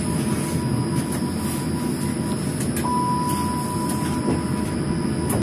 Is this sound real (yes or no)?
yes